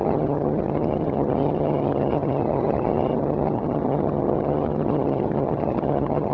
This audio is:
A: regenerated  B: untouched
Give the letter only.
A